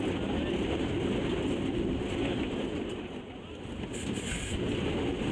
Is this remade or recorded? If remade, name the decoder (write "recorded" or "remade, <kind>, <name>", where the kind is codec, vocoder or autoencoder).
recorded